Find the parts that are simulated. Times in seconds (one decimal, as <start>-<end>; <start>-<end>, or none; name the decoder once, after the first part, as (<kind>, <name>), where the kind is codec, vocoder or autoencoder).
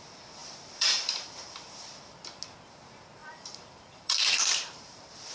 0.4-1.7 (vocoder, BigVGAN v2); 3.2-5.3